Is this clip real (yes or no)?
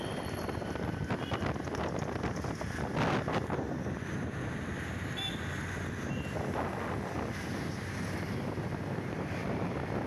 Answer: yes